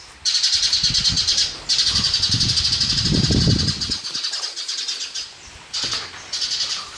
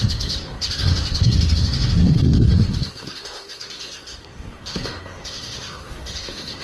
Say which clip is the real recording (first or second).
first